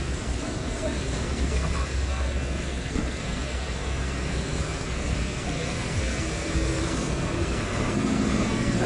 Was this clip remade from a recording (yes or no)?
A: yes